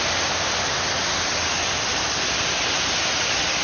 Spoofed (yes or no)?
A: no